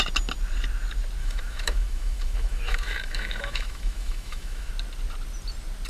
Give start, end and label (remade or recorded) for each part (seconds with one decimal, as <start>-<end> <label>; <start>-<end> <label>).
0.0-1.2 recorded; 1.2-4.7 remade; 4.7-5.9 recorded